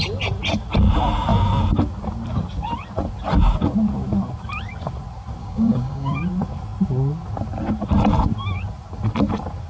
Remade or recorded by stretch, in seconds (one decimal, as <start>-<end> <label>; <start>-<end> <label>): 0.0-5.4 recorded; 5.4-6.2 remade; 6.2-9.7 recorded